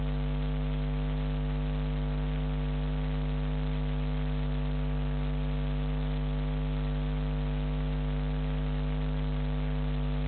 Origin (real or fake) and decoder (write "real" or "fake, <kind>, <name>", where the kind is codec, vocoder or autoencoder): real